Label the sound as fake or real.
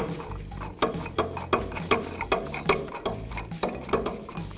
real